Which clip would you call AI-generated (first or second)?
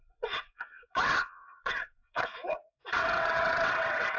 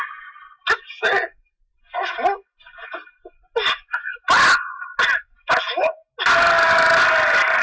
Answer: first